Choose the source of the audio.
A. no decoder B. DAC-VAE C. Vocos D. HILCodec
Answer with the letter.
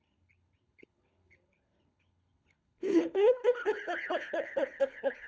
D